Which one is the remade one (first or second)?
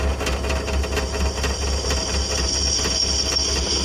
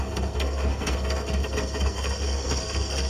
second